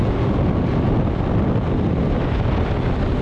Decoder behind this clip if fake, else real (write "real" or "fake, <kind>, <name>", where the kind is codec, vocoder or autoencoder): real